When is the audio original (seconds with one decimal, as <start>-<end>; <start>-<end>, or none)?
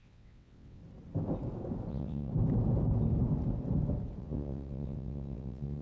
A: 0.8-1.9; 2.3-4.2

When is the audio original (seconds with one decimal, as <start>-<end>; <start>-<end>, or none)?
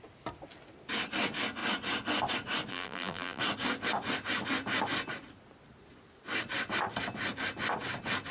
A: 0.0-2.7; 3.4-8.3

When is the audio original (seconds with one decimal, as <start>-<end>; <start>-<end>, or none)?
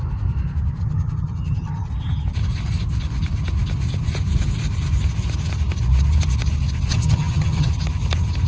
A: 0.0-0.8; 1.9-6.9; 7.7-8.5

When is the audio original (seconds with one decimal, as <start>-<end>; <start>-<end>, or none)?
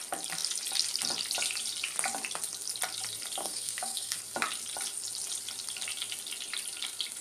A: 0.0-3.4; 4.2-7.2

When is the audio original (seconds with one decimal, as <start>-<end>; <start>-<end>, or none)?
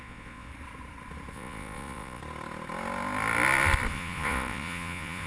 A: 0.5-1.3; 2.2-3.9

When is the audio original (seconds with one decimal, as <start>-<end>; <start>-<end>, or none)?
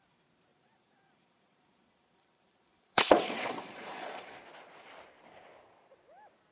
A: 0.0-0.5; 4.4-6.5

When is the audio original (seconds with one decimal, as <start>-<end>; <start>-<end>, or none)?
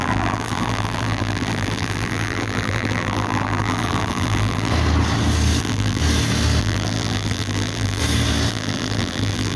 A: 4.7-5.6; 6.0-6.6; 8.0-8.5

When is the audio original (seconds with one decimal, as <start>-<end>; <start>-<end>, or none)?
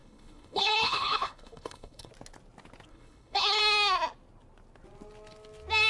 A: 2.1-2.9; 3.6-5.9